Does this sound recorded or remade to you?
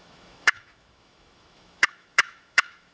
remade